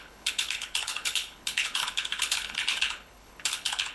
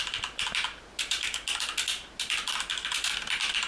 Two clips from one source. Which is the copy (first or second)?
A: first